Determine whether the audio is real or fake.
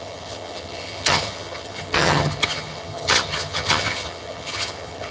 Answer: fake